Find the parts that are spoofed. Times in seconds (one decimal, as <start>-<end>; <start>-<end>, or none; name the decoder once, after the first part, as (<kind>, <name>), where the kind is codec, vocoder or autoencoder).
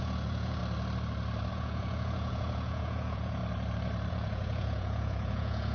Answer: 0.0-0.6 (vocoder, Vocos); 1.5-3.4; 4.1-5.7